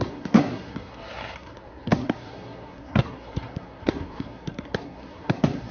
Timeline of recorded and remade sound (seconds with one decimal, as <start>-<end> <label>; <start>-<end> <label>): 0.0-5.7 remade